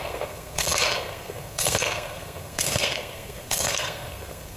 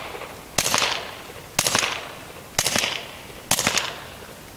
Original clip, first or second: second